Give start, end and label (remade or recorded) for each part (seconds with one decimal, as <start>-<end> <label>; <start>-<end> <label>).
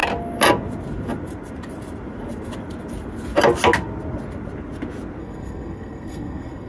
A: 0.0-5.2 recorded; 5.2-6.7 remade